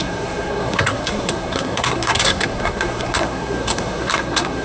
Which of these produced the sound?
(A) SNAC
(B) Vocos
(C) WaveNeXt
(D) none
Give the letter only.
A